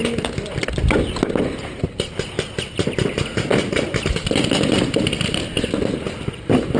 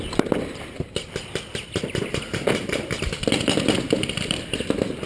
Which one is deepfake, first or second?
second